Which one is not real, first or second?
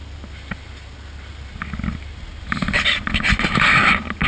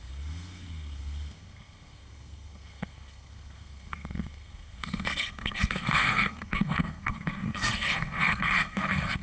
second